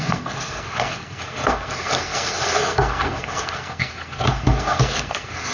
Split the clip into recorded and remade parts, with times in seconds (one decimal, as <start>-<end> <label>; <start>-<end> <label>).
0.0-5.5 remade